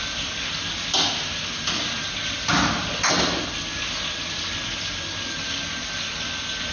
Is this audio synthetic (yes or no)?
no